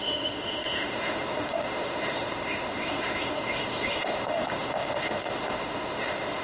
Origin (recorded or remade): remade